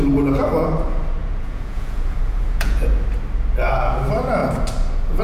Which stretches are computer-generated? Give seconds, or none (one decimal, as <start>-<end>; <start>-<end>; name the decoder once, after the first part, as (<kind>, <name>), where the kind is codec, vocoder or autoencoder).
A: 1.2-2.9 (vocoder, Vocos)